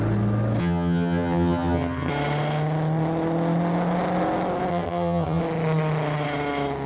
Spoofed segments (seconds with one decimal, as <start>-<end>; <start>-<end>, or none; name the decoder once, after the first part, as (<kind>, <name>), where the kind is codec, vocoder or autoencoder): 0.6-2.1 (vocoder, HiFi-GAN); 4.7-5.4